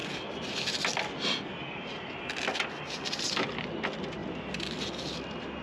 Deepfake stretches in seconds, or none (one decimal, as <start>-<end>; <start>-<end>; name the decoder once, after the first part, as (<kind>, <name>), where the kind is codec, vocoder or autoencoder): none